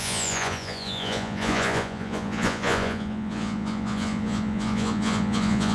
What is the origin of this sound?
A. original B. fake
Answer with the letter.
B